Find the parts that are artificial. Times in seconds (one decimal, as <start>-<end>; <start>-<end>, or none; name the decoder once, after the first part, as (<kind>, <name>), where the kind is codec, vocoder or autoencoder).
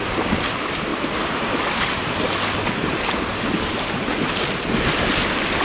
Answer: none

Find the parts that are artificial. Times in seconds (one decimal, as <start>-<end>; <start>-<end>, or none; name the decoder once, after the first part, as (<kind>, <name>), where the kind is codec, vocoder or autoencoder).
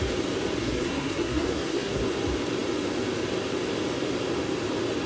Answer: 0.6-2.0 (codec, SNAC)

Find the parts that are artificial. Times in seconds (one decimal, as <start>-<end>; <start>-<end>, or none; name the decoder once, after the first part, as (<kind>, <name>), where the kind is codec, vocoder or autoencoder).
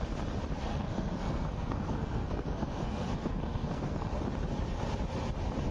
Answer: 0.7-4.1 (codec, SNAC)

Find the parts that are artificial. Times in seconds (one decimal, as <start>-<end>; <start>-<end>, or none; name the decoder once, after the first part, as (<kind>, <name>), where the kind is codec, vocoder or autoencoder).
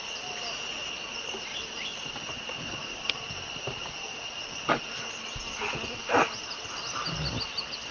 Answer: none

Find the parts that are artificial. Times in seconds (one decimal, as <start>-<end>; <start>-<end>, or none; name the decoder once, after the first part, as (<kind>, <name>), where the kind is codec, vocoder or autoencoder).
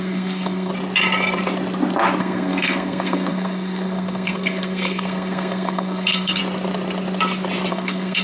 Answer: 0.0-0.7 (codec, SNAC); 2.2-6.4; 7.7-8.2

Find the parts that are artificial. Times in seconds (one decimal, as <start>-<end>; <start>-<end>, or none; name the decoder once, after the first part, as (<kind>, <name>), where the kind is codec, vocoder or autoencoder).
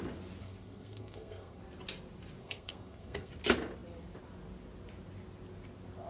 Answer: 0.4-1.6 (codec, SNAC); 2.4-3.3